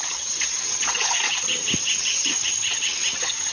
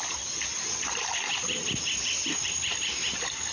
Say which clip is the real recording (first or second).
second